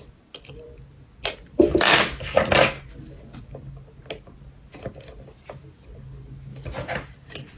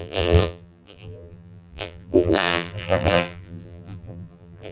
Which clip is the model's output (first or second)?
second